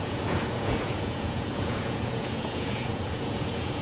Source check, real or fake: fake